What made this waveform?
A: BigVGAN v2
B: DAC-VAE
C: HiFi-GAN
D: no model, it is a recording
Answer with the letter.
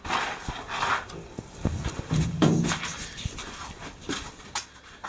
D